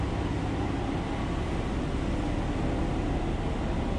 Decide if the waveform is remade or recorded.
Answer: recorded